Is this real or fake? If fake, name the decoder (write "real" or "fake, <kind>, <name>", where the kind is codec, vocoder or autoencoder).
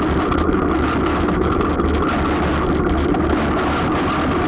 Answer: real